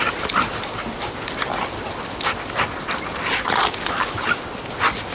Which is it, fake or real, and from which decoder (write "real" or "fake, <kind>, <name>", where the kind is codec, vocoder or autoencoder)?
real